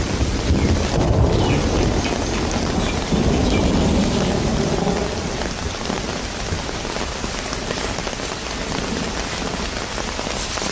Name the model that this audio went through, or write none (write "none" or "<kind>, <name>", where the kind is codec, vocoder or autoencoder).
none